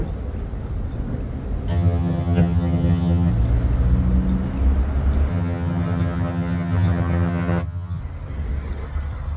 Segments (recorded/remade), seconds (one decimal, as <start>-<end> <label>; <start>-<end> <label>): 0.0-1.7 recorded; 1.7-3.3 remade; 3.3-5.3 recorded; 5.3-8.0 remade; 8.0-9.4 recorded